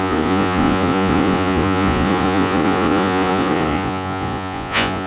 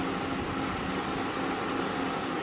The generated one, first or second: first